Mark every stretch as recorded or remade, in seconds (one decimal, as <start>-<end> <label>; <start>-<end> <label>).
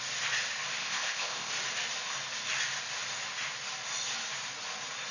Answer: 0.0-0.8 recorded; 0.8-1.5 remade; 1.5-5.1 recorded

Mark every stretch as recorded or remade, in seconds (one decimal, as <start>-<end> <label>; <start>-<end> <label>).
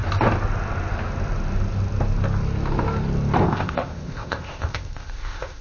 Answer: 0.0-3.4 recorded; 3.4-5.6 remade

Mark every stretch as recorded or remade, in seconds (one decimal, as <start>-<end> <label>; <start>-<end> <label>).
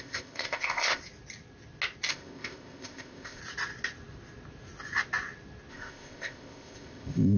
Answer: 0.0-1.0 remade; 1.0-2.1 recorded; 2.1-3.4 remade; 3.4-5.7 recorded; 5.7-7.4 remade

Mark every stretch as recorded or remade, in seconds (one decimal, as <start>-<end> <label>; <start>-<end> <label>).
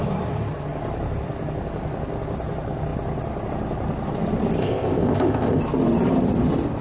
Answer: 0.0-4.6 recorded; 4.6-5.6 remade; 5.6-6.8 recorded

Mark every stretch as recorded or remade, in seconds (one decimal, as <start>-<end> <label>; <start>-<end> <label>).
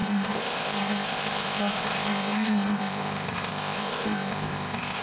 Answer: 0.0-5.0 remade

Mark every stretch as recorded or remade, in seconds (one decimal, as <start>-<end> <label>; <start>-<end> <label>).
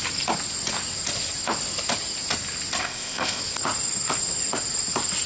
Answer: 0.0-2.8 recorded; 2.8-3.4 remade; 3.4-5.3 recorded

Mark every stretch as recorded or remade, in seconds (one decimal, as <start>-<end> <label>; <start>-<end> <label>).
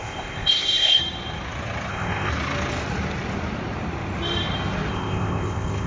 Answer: 0.0-1.0 remade; 1.0-1.9 recorded; 1.9-2.3 remade; 2.3-4.9 recorded; 4.9-5.9 remade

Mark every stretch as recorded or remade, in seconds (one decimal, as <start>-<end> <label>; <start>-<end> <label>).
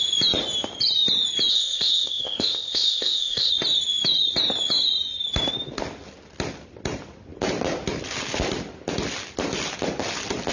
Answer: 0.0-1.5 recorded; 1.5-3.5 remade; 3.5-10.5 recorded